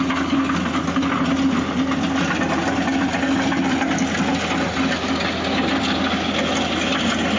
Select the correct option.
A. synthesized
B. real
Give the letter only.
B